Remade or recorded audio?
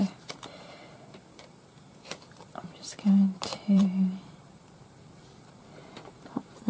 remade